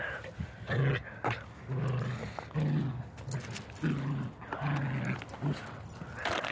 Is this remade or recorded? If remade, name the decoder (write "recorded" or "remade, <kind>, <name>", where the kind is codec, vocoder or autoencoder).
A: recorded